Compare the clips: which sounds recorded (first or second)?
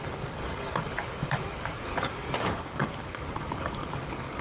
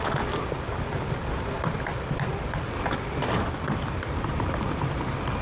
second